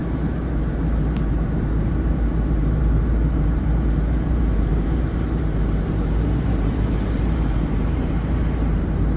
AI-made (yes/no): yes